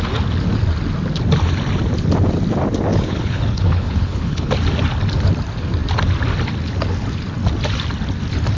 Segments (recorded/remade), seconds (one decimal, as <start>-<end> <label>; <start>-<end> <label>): 0.0-2.9 recorded; 2.9-4.5 remade; 4.5-8.6 recorded